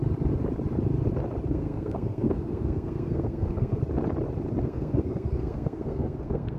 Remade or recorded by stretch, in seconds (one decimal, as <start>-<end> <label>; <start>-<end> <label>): 0.0-1.5 recorded; 1.5-3.8 remade; 3.8-4.6 recorded; 4.6-6.6 remade